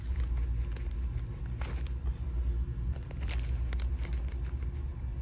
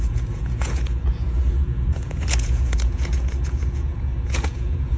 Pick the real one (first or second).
first